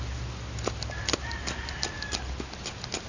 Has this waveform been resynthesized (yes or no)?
no